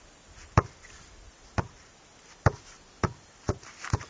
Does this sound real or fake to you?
real